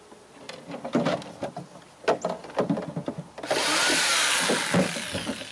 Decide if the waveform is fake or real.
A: real